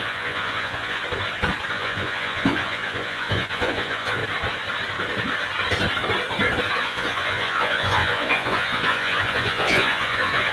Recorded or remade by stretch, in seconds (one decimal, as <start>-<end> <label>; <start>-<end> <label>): 0.0-1.0 remade; 1.0-1.7 recorded; 1.7-4.2 remade; 4.2-6.8 recorded; 6.8-10.5 remade